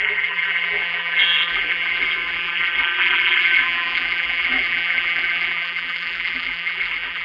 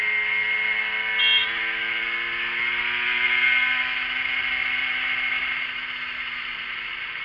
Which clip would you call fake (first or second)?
first